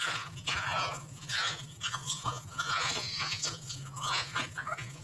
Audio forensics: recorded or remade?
remade